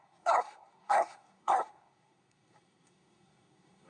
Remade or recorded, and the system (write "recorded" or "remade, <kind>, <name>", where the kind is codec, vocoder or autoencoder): remade, codec, SNAC